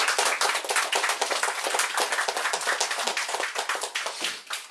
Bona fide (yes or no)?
yes